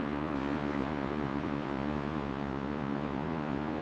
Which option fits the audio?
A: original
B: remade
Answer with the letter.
B